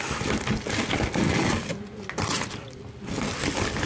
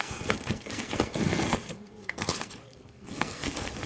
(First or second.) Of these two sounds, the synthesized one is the second